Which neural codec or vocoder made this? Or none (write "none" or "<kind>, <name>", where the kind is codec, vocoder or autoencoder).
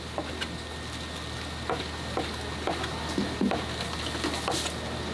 none